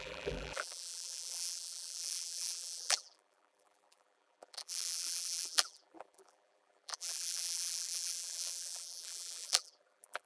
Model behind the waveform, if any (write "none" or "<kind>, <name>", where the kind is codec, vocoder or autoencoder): vocoder, BigVGAN v2